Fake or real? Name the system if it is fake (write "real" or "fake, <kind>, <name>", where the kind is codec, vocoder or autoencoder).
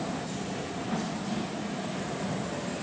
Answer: real